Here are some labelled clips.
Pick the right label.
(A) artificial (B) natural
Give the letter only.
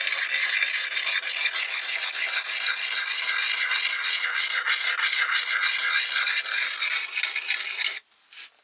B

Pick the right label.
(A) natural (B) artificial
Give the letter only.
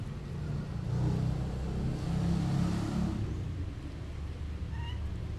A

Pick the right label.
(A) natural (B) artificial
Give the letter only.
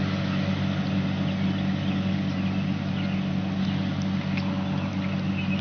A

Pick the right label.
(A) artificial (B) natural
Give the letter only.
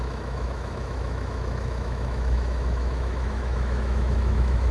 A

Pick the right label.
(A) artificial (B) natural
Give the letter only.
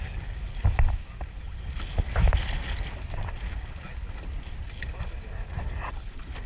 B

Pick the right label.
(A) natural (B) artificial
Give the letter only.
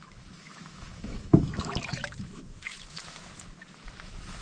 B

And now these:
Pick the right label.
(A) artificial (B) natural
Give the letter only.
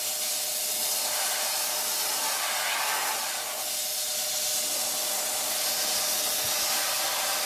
B